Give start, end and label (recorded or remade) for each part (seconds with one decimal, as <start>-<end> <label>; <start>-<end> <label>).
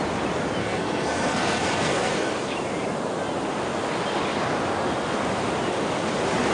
0.0-0.6 recorded; 0.6-2.3 remade; 2.3-6.5 recorded